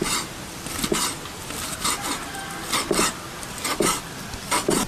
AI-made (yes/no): no